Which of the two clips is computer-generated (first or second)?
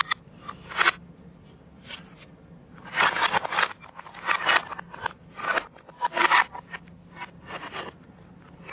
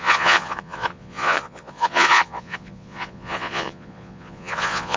second